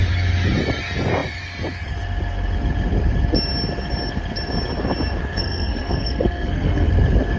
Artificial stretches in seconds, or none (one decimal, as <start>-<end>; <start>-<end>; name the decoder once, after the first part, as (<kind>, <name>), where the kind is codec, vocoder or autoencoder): 5.2-6.9 (codec, SNAC)